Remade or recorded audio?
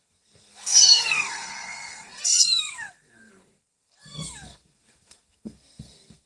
remade